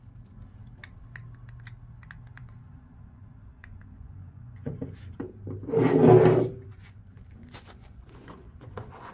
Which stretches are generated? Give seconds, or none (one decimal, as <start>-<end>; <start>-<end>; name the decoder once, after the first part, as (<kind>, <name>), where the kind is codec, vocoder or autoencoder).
2.3-5.2 (vocoder, Vocos); 6.7-9.1